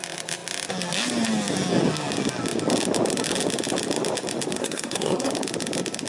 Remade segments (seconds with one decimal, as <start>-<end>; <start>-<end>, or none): 4.6-5.3